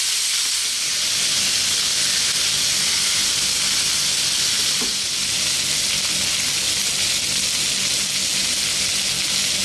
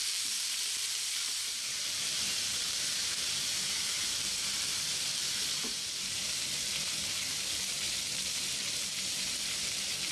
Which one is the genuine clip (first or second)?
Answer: first